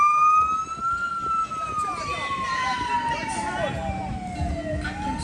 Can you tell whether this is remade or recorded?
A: recorded